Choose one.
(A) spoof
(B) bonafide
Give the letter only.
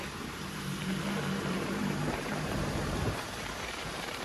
A